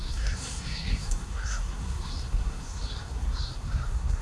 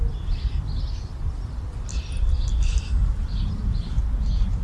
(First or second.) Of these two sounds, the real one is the second